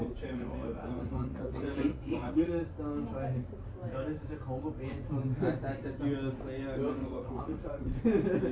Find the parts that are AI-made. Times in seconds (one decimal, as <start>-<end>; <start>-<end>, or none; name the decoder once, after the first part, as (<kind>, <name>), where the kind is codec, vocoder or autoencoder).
0.0-2.6 (vocoder, Vocos); 7.0-8.0